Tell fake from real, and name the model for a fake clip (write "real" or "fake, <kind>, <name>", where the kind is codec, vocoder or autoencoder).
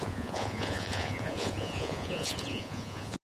fake, vocoder, Vocos